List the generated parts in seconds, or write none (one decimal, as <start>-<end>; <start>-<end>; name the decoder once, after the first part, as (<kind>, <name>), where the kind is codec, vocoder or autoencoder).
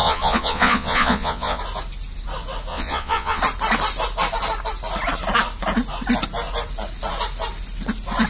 0.0-1.6 (vocoder, Vocos); 2.7-3.4